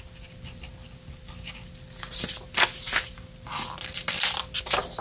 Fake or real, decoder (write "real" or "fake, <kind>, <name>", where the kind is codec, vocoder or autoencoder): real